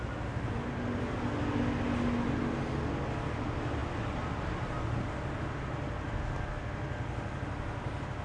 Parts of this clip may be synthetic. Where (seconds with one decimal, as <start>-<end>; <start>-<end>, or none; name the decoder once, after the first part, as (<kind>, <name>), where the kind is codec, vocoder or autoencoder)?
none